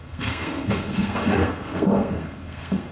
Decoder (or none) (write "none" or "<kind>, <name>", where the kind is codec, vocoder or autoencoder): codec, SNAC